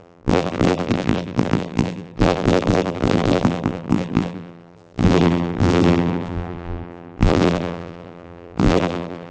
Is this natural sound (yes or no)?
no